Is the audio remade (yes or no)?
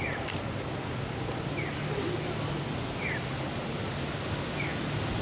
no